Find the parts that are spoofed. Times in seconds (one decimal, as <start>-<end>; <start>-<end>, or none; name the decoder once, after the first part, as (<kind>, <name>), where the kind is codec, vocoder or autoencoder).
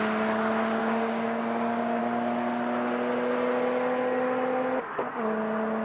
0.8-2.0 (codec, DAC)